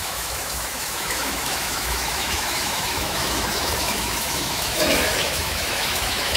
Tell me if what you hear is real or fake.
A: fake